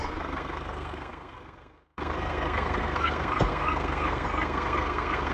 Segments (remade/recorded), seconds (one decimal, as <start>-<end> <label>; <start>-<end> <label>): 0.0-5.3 remade